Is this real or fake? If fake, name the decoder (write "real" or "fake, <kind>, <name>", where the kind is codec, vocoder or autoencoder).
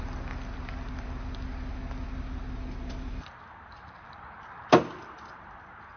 real